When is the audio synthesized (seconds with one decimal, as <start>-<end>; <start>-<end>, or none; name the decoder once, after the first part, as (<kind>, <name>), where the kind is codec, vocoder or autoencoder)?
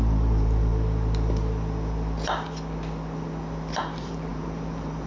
0.0-0.7 (vocoder, BigVGAN v2); 3.8-5.1